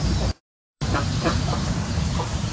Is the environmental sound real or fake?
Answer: fake